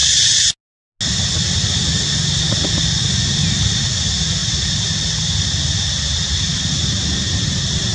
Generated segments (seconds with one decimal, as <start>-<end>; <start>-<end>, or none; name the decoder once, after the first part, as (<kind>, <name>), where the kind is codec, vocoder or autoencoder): none